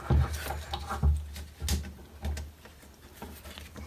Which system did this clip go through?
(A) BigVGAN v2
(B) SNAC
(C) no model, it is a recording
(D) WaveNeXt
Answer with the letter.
C